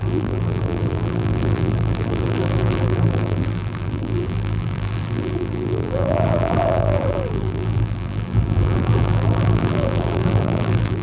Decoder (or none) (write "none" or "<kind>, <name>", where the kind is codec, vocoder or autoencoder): vocoder, BigVGAN v2